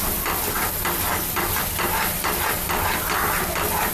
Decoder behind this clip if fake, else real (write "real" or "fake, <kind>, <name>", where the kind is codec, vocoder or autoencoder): real